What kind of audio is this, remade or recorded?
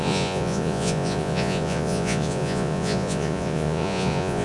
remade